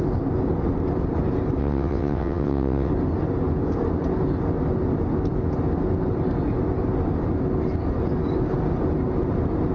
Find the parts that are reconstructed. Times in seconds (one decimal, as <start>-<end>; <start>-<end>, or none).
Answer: 1.6-2.9